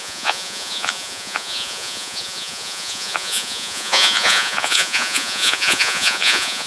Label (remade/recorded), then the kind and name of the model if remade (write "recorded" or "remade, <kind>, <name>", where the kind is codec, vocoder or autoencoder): remade, vocoder, Vocos